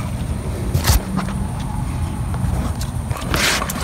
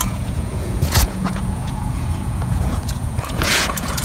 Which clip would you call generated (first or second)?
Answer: second